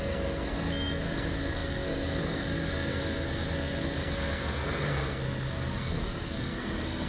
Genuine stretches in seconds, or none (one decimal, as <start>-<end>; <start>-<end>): none